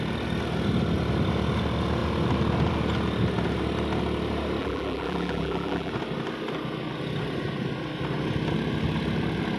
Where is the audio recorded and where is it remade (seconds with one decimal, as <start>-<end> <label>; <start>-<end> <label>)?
0.0-4.6 recorded; 4.6-5.9 remade; 5.9-9.6 recorded